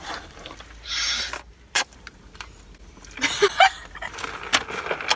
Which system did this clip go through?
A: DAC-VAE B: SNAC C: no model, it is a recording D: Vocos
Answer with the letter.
C